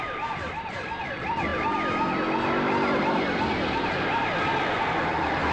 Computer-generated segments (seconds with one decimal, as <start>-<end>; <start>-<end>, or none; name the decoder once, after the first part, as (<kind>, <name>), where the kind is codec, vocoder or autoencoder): 0.0-1.5 (vocoder, BigVGAN v2); 4.8-5.5